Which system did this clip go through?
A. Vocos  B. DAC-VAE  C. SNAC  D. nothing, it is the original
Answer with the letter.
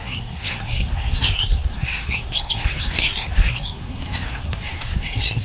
C